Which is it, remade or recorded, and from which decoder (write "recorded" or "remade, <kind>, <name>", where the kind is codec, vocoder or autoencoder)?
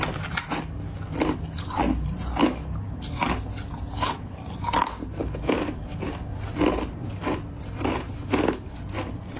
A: recorded